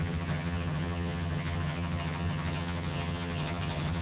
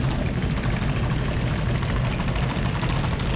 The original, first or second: second